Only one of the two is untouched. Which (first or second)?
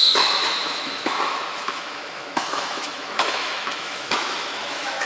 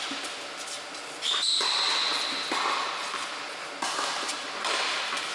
second